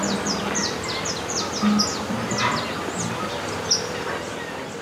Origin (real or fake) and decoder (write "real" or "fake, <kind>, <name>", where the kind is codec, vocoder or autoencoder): real